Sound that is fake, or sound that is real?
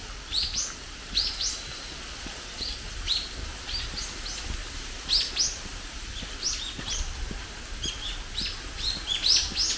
real